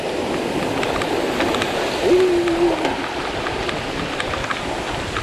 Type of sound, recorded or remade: recorded